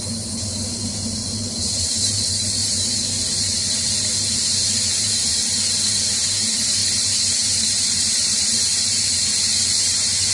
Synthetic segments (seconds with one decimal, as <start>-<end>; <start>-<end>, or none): 0.0-5.3; 5.9-10.3